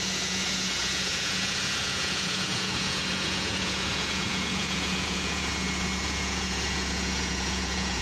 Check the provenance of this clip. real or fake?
fake